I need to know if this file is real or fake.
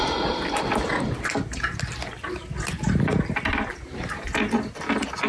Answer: real